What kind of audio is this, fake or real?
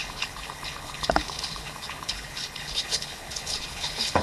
fake